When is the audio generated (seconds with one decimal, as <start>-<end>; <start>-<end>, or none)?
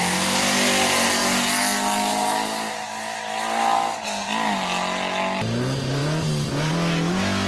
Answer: none